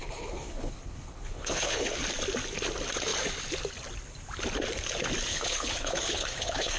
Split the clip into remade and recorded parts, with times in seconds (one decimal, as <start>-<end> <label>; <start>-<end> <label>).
0.0-2.0 remade; 2.0-5.3 recorded; 5.3-6.8 remade